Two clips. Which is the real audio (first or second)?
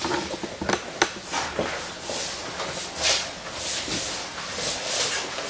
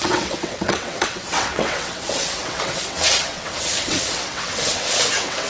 first